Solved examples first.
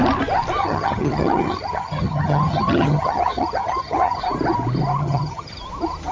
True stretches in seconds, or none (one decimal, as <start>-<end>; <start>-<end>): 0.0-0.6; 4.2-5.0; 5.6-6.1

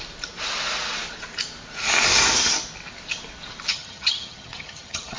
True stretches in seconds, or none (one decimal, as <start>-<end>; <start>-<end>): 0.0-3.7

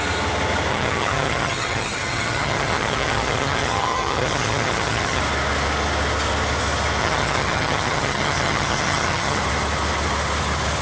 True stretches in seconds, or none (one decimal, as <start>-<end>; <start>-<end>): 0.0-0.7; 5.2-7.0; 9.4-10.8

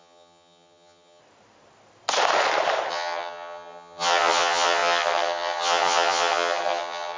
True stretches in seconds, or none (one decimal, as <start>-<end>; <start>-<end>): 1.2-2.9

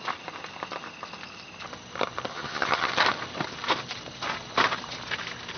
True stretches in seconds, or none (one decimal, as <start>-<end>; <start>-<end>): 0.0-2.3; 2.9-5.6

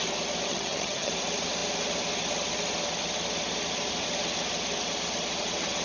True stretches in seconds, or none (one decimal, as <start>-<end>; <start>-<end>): 0.0-0.5; 1.1-5.8